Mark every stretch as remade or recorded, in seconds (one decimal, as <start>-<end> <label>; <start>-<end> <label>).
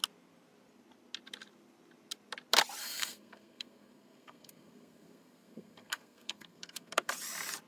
0.0-2.8 recorded; 2.8-7.1 remade; 7.1-7.7 recorded